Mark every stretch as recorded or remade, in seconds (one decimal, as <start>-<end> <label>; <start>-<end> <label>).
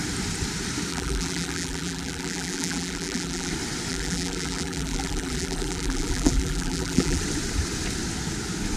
0.0-0.9 recorded; 0.9-3.5 remade; 3.5-3.9 recorded; 3.9-7.2 remade; 7.2-8.8 recorded